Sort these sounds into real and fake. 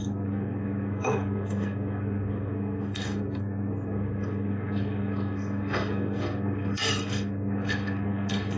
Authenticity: fake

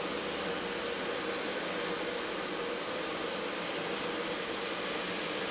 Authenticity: real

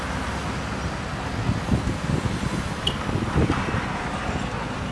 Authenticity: real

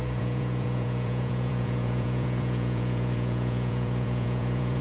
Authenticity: fake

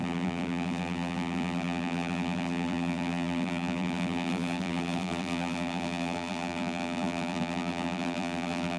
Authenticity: fake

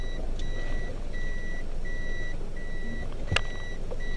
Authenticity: real